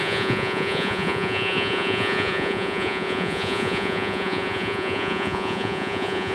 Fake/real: fake